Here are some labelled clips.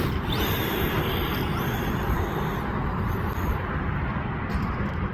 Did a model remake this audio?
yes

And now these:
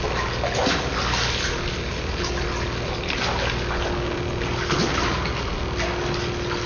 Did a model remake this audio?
no